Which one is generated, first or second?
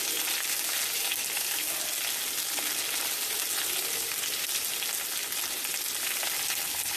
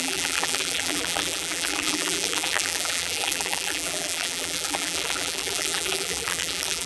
second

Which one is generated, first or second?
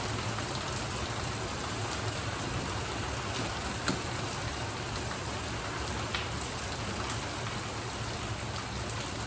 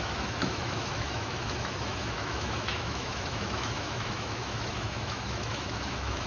second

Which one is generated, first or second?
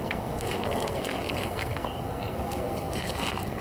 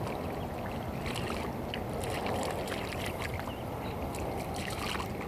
first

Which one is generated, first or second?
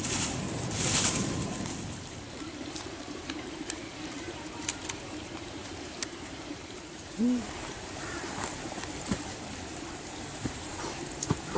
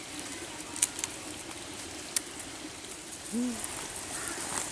first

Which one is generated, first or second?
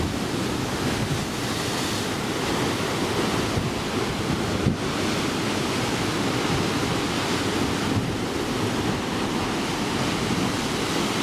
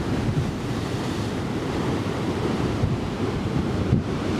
second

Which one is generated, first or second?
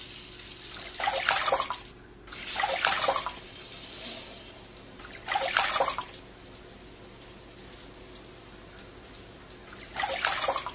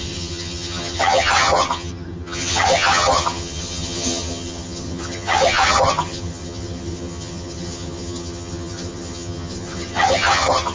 second